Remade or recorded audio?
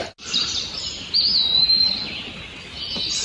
recorded